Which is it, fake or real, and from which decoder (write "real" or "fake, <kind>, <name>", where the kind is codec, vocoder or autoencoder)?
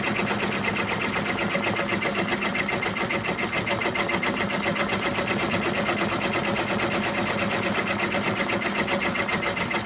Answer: real